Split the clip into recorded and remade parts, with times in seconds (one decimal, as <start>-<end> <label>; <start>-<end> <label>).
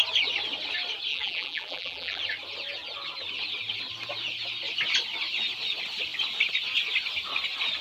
0.0-1.1 recorded; 1.1-2.2 remade; 2.2-7.8 recorded